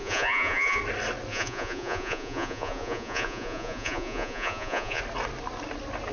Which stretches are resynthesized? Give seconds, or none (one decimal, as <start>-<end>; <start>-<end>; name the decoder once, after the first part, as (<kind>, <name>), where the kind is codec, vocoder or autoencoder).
0.0-0.8 (vocoder, Vocos); 1.3-5.0